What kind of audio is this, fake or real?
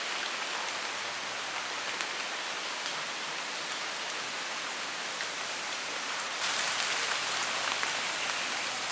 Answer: real